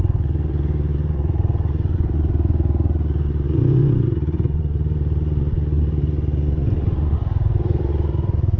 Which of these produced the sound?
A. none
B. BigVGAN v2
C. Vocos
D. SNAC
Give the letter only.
C